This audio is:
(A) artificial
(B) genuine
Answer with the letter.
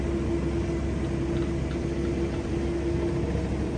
B